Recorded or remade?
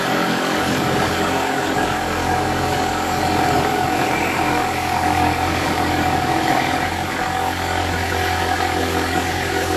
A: remade